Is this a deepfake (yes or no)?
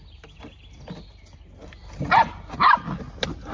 no